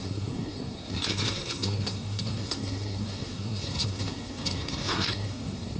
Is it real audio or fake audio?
fake